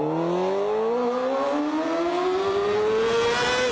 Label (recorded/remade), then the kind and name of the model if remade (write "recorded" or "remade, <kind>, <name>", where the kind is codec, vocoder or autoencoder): recorded